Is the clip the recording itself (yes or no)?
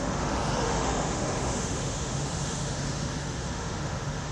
no